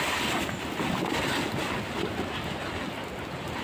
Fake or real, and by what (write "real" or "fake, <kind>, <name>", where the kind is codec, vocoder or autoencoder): real